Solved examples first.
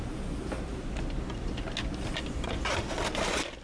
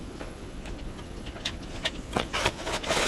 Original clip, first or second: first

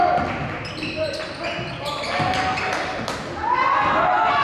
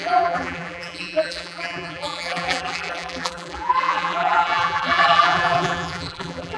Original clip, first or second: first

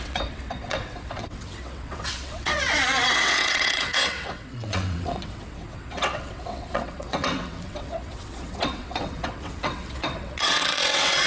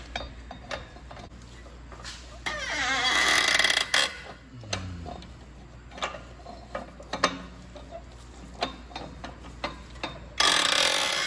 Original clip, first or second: second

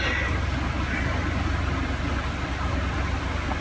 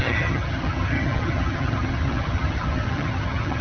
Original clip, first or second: first